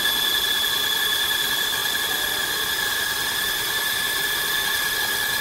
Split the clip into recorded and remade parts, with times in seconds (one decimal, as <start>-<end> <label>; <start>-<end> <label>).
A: 0.0-5.4 recorded